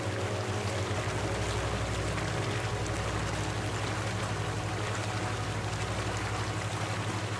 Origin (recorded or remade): recorded